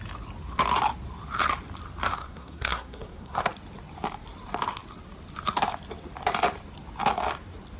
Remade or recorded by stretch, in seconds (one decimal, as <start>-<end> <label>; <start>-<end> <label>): 0.0-2.2 recorded; 2.2-3.5 remade; 3.5-7.8 recorded